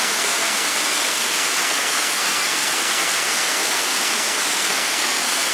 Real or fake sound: fake